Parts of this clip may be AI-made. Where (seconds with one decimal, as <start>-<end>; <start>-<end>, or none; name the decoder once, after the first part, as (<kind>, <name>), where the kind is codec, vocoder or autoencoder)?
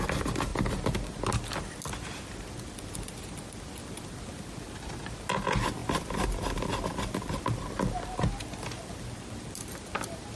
5.8-7.6 (vocoder, BigVGAN v2)